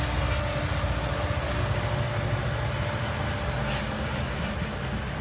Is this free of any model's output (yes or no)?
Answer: yes